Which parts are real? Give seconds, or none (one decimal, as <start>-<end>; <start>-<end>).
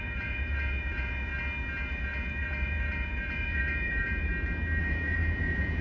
1.3-1.9; 4.3-4.8